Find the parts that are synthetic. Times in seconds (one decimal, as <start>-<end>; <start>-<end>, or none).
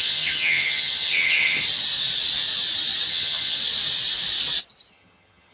0.0-1.6; 3.1-3.6; 4.9-5.5